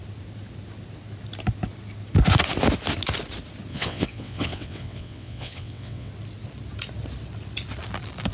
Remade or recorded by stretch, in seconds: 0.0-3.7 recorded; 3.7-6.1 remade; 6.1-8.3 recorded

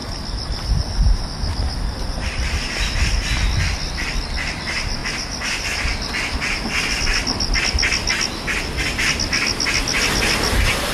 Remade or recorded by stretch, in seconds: 0.0-0.8 remade; 0.8-5.0 recorded; 5.0-7.6 remade; 7.6-10.9 recorded

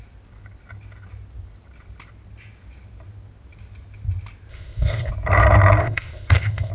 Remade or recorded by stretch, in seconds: 0.0-4.5 recorded; 4.5-5.1 remade; 5.1-5.8 recorded; 5.8-6.7 remade